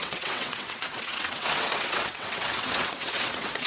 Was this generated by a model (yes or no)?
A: yes